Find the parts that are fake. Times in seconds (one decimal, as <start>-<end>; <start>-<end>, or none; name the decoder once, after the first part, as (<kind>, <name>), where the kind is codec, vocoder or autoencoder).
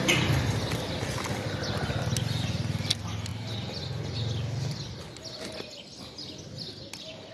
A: none